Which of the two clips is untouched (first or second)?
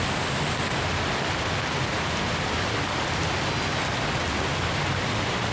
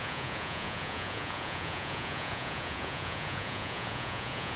first